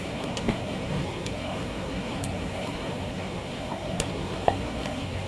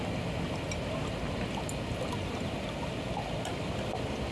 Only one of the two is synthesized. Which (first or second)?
first